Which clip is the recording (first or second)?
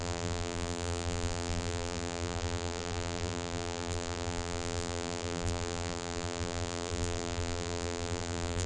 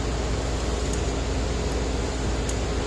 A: second